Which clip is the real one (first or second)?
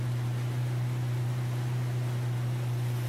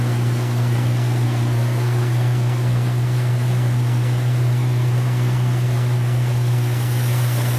first